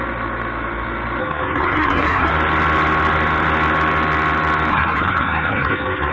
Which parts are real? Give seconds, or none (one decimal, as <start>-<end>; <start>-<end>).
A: 0.0-1.2; 2.3-4.7